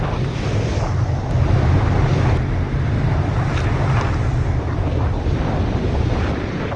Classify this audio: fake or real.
real